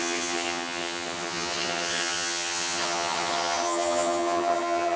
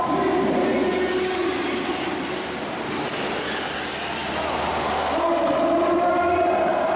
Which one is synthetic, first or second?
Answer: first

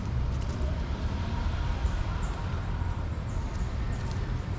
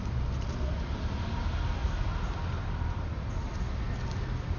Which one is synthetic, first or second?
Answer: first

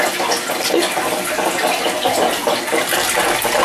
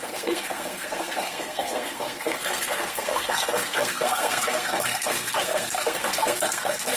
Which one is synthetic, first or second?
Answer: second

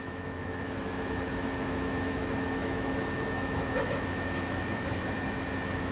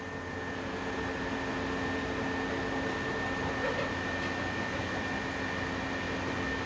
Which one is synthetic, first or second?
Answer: first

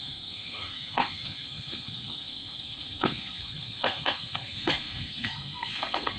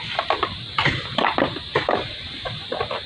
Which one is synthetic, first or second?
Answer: first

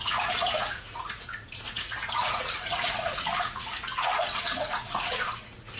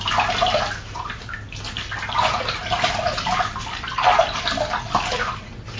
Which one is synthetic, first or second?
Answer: first